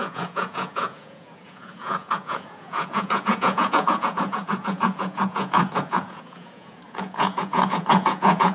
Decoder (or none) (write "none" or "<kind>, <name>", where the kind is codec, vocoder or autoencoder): vocoder, Vocos